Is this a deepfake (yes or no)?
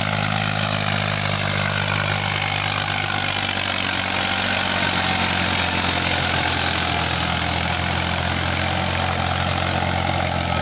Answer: no